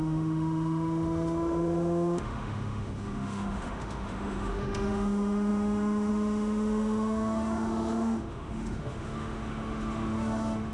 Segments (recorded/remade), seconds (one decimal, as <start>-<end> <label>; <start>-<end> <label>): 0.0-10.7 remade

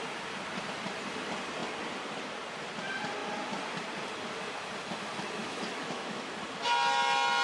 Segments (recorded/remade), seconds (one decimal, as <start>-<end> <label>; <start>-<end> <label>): 0.0-5.4 recorded; 5.4-6.3 remade; 6.3-7.4 recorded

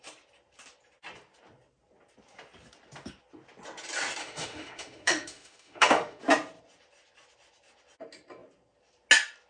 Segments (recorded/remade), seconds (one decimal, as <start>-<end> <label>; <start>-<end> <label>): 0.0-4.2 recorded; 4.2-6.2 remade; 6.2-9.5 recorded

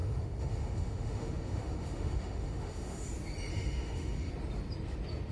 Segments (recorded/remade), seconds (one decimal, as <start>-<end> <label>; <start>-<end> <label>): 0.0-3.1 remade; 3.1-3.5 recorded; 3.5-4.3 remade; 4.3-5.3 recorded

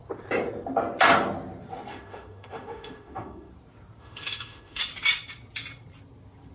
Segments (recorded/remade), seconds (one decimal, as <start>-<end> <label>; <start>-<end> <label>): 0.0-1.9 recorded; 1.9-3.5 remade; 3.5-4.0 recorded; 4.0-4.8 remade; 4.8-6.5 recorded

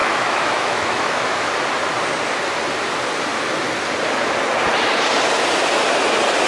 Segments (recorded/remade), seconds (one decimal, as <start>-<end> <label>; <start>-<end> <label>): 0.0-1.5 remade; 1.5-6.5 recorded

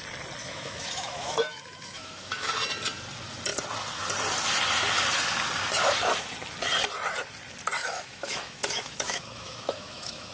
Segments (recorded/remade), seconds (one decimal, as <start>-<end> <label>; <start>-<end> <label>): 0.0-0.4 recorded; 0.4-2.5 remade; 2.5-7.8 recorded; 7.8-10.3 remade

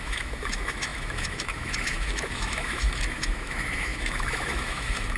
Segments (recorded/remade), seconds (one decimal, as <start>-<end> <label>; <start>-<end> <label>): 0.0-5.2 remade